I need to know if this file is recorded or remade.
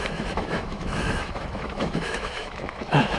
remade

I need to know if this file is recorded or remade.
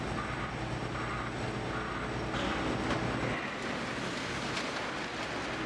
recorded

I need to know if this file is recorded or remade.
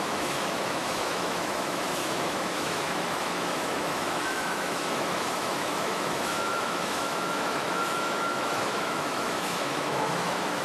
remade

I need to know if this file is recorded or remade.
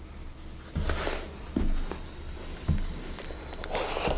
recorded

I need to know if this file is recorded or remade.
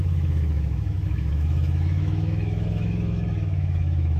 remade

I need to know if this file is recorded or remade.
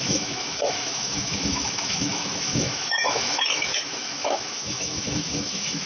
remade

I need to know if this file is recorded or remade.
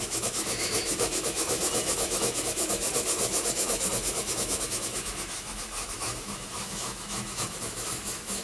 remade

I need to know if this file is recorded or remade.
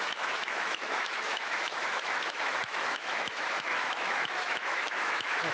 remade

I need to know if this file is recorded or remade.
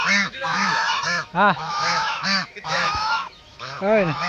remade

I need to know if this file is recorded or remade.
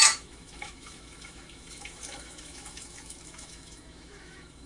remade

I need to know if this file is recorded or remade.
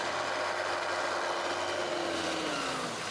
recorded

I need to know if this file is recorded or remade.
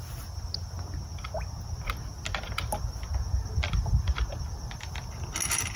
recorded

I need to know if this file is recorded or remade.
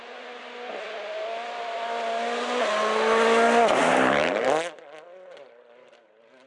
recorded